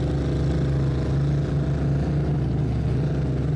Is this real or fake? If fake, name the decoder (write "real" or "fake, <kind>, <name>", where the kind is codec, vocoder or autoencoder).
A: real